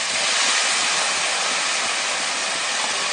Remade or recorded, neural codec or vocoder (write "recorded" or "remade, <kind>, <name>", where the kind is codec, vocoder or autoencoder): recorded